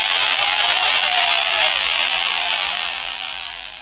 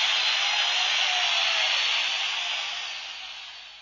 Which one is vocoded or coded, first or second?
first